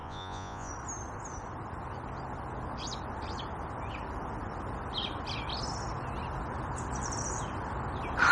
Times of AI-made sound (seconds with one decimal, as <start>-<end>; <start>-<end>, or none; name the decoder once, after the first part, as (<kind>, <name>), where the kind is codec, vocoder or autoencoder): 0.0-0.7 (vocoder, Vocos)